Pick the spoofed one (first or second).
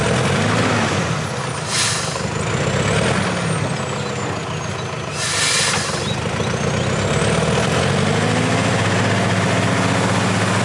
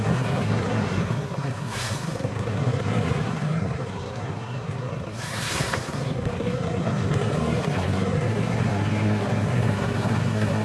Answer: second